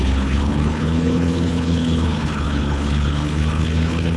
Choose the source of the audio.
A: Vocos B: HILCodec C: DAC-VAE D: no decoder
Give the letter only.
B